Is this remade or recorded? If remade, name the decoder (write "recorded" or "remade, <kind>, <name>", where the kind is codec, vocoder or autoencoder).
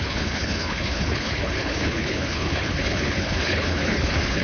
remade, codec, HILCodec